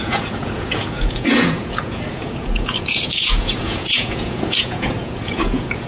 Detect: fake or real fake